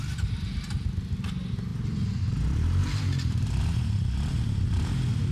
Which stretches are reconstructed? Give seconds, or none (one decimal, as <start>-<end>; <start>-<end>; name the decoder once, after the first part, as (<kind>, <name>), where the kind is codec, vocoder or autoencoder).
2.8-3.6 (vocoder, BigVGAN v2)